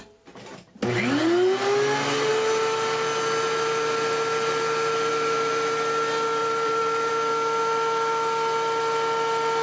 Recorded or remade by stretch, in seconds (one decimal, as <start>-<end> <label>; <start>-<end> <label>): 0.0-6.4 recorded; 6.4-7.1 remade; 7.1-9.6 recorded